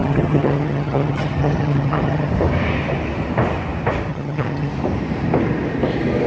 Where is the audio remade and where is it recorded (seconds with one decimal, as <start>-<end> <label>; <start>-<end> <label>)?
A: 0.0-2.3 remade; 2.3-4.1 recorded; 4.1-4.7 remade; 4.7-6.3 recorded